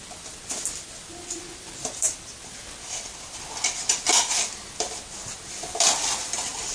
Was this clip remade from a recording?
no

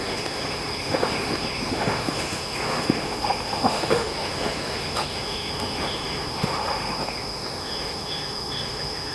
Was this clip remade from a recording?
yes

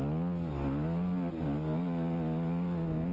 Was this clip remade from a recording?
no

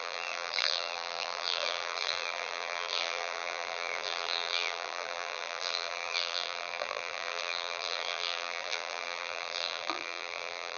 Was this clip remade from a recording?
yes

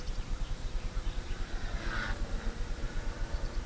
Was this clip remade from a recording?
yes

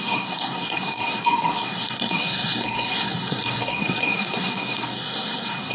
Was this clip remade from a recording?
yes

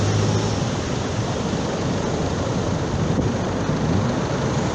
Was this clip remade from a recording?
no